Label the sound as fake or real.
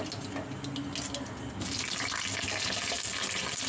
real